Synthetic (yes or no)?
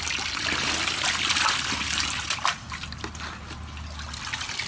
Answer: no